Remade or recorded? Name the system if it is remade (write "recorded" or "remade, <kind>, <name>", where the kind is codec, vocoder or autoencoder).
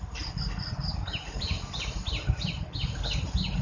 recorded